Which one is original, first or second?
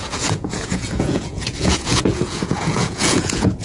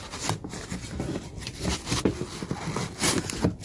second